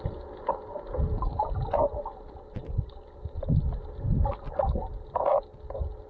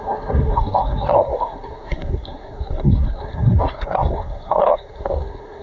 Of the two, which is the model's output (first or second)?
second